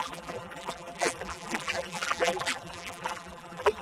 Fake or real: fake